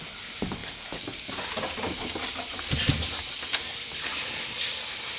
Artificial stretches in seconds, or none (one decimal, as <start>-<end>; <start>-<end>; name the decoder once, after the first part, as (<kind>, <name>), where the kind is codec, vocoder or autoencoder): 0.0-0.6 (vocoder, BigVGAN v2); 3.7-5.2